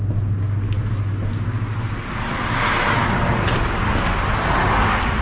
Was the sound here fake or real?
real